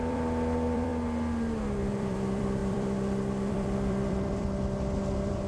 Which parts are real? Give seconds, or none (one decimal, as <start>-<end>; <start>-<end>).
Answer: 0.9-1.9